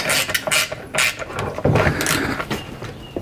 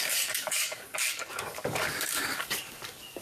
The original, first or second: first